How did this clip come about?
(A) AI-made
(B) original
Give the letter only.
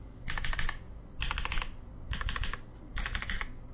B